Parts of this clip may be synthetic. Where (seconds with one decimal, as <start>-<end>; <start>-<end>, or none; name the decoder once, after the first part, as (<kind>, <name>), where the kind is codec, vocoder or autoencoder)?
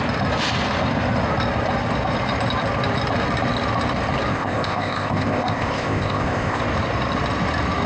4.3-6.6 (codec, ZipCodec)